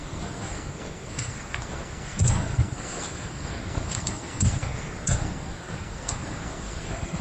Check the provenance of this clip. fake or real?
fake